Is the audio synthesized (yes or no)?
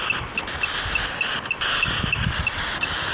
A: no